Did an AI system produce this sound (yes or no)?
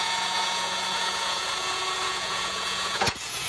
yes